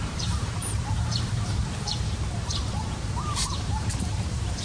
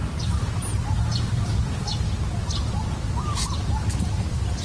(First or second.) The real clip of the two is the second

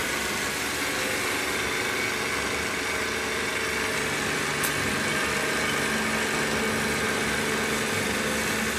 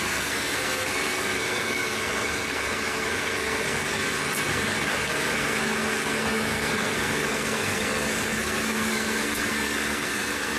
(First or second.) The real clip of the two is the first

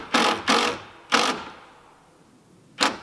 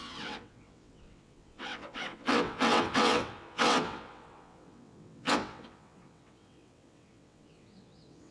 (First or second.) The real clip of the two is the first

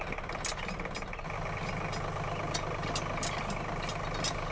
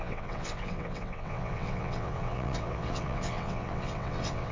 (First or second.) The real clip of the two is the first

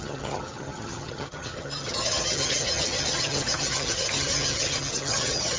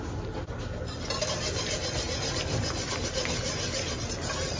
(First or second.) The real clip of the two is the second